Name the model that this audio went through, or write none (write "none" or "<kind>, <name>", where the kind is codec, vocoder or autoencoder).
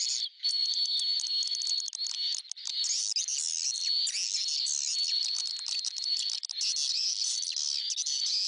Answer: none